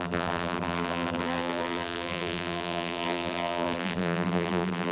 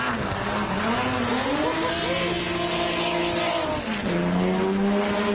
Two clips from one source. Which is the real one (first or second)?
second